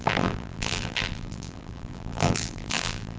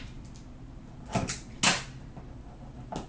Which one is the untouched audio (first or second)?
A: second